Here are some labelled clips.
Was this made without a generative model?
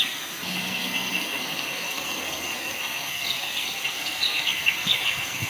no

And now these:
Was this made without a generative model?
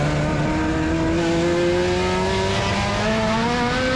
yes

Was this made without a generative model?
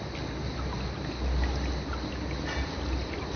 yes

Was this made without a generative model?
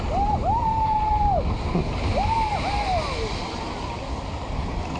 yes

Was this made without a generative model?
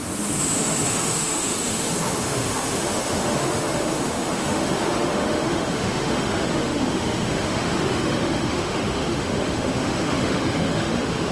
no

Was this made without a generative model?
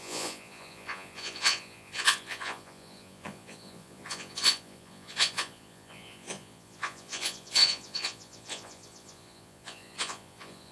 no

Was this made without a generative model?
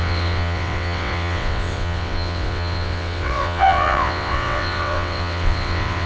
no